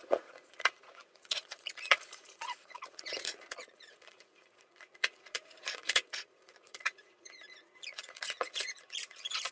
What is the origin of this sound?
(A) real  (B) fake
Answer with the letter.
B